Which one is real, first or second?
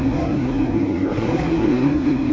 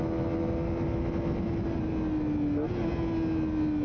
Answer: second